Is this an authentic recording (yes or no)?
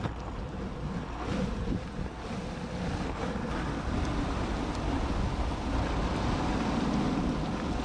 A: yes